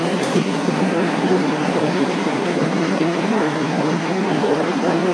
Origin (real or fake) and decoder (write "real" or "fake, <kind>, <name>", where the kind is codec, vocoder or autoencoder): fake, codec, SNAC